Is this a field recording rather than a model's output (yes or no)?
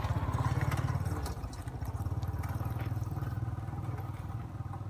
yes